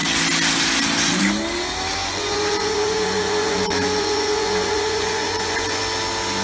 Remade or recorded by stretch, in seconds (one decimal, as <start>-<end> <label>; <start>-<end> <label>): 0.0-2.0 recorded; 2.0-5.8 remade; 5.8-6.4 recorded